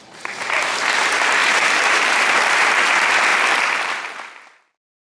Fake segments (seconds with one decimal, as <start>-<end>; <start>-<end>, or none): 1.4-2.7